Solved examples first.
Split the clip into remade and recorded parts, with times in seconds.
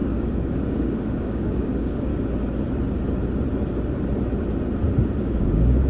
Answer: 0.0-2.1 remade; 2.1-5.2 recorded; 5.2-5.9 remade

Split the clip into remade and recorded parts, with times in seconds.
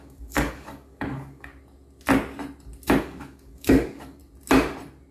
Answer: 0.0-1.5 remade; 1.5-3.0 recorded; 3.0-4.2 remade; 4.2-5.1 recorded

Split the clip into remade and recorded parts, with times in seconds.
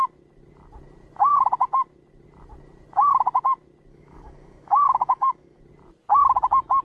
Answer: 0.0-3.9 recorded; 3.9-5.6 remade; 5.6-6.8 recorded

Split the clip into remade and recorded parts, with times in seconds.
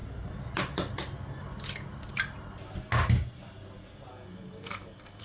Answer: 0.0-4.1 recorded; 4.1-5.2 remade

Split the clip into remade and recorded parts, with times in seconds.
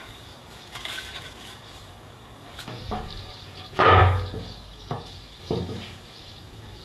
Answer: 0.0-6.8 remade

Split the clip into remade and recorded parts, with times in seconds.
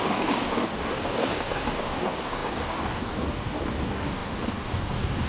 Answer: 0.0-5.3 remade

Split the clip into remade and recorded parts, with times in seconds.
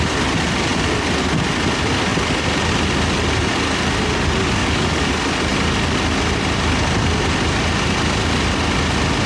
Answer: 0.0-4.6 recorded; 4.6-5.1 remade; 5.1-9.3 recorded